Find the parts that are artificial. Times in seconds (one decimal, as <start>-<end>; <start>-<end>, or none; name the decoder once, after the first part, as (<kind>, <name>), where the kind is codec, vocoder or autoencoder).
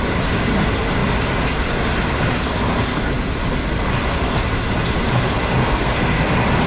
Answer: 5.6-6.2 (codec, SNAC)